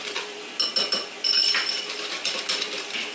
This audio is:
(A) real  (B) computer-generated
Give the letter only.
A